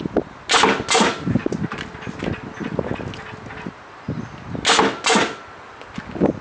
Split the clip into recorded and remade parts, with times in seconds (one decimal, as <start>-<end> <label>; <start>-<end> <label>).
0.0-6.4 recorded